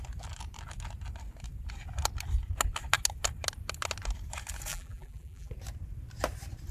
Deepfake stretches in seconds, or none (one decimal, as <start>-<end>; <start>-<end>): 4.7-5.5